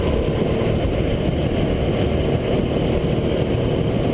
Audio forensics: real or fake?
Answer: real